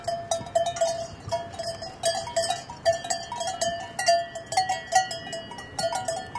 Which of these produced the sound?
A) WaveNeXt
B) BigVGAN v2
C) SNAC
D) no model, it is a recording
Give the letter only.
D